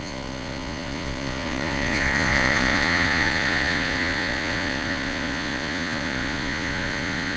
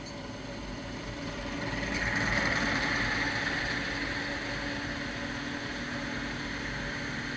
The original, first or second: second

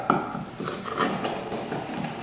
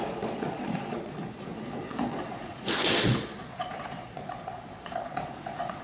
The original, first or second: first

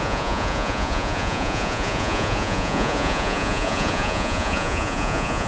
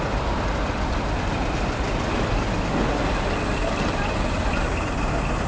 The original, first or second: second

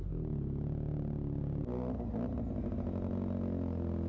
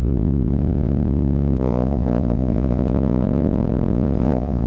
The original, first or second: first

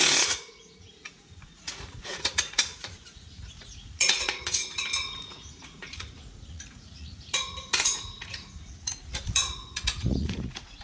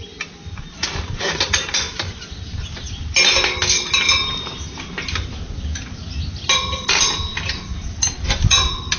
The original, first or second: second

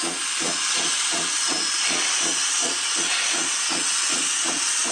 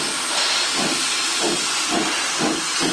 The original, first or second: second